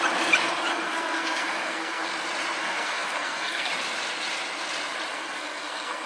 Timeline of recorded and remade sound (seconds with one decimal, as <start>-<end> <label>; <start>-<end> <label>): 0.0-0.7 recorded; 0.7-2.1 remade; 2.1-2.6 recorded; 2.6-3.7 remade; 3.7-5.1 recorded; 5.1-6.1 remade